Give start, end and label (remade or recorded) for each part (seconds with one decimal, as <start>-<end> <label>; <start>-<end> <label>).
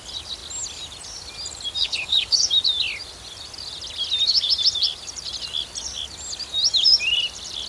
0.0-1.8 recorded; 1.8-2.5 remade; 2.5-7.7 recorded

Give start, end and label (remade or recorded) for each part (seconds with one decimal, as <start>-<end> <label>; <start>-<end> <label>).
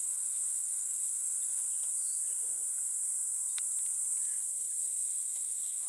0.0-1.6 remade; 1.6-4.8 recorded; 4.8-5.9 remade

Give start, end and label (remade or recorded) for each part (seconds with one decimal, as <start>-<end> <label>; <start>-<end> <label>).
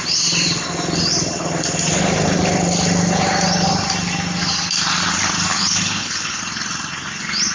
0.0-5.5 recorded; 5.5-6.4 remade; 6.4-7.5 recorded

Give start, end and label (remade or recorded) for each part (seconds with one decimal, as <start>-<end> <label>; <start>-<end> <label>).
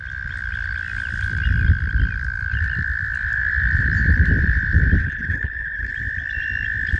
0.0-5.0 recorded; 5.0-5.9 remade; 5.9-7.0 recorded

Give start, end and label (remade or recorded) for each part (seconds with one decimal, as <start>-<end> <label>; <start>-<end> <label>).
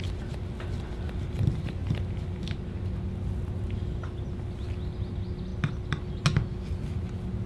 0.0-7.5 recorded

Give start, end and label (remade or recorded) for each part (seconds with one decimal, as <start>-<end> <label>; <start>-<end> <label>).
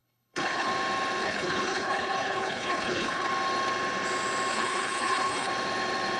0.0-0.7 remade; 0.7-1.2 recorded; 1.2-3.3 remade; 3.3-4.5 recorded; 4.5-5.5 remade; 5.5-6.2 recorded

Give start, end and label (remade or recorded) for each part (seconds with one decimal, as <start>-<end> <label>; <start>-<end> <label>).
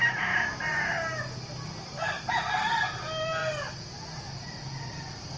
0.0-5.4 recorded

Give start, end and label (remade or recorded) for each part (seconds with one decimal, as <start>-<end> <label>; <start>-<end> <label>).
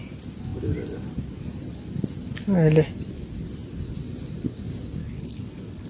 0.0-5.0 recorded; 5.0-5.9 remade